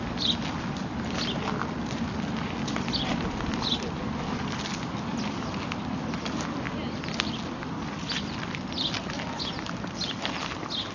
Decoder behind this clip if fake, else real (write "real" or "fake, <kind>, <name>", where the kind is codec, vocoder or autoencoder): real